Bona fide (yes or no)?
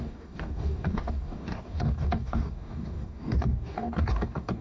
no